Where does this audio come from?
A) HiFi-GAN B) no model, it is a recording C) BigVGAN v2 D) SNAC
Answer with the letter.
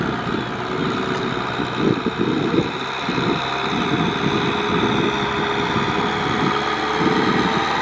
B